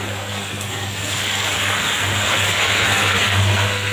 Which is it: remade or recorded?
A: remade